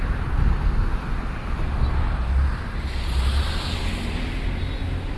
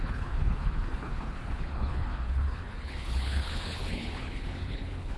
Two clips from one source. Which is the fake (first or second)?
second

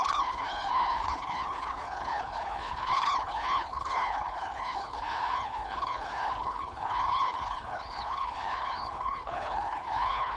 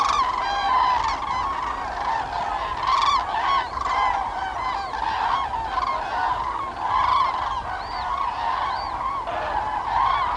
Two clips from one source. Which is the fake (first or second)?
first